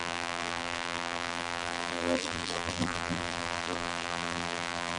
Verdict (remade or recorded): remade